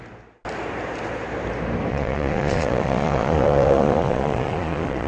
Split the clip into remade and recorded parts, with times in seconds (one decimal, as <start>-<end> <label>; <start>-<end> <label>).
0.0-1.9 recorded; 1.9-5.1 remade